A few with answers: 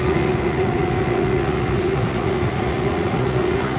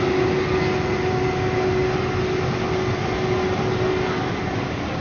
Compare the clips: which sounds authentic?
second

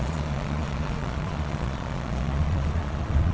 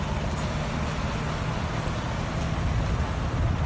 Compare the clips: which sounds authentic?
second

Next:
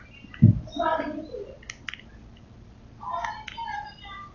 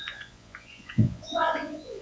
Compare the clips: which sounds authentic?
first